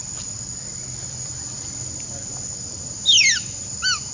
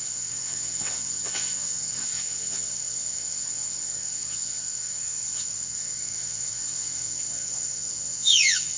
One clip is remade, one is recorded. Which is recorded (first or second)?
first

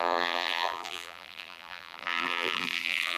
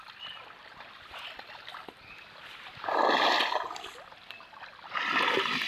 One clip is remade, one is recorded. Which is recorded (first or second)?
second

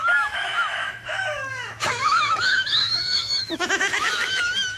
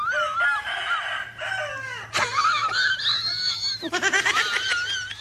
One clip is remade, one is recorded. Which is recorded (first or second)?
second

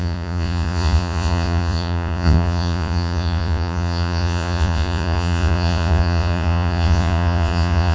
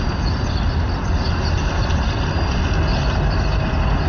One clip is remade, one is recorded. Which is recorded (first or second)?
second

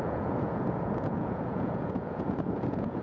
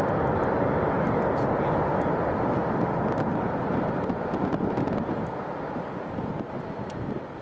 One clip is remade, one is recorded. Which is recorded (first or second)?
second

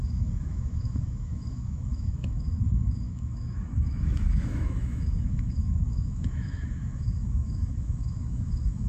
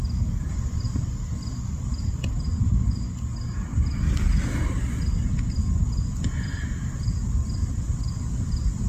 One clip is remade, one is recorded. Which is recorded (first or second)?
second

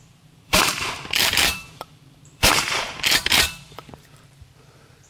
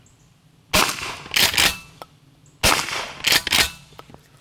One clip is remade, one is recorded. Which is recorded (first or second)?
second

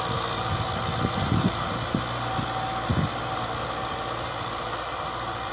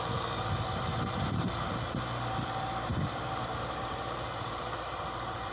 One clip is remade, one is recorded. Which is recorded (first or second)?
first